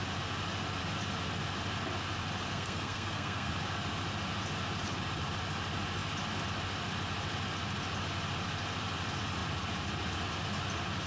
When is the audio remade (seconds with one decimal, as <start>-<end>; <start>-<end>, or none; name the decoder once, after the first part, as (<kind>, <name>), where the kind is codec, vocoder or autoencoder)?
2.5-3.5 (codec, SNAC)